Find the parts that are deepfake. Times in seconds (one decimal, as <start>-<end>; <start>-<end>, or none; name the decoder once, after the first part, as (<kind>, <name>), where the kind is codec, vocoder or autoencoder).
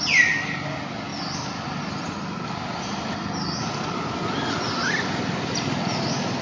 none